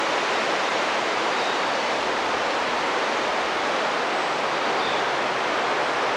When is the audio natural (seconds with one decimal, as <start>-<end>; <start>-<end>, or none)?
0.0-0.7; 1.8-6.2